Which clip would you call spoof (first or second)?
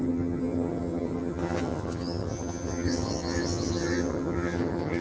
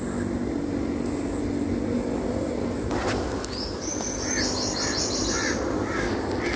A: first